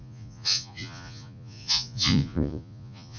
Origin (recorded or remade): remade